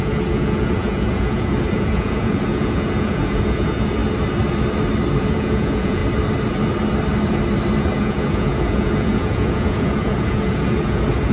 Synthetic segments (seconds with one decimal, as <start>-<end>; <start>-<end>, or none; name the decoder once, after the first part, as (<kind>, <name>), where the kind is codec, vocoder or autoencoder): 0.0-4.0 (vocoder, Vocos); 5.2-6.0; 8.0-11.3